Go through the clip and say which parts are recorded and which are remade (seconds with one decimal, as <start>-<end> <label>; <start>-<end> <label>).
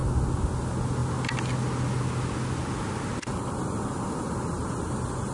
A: 0.0-5.3 recorded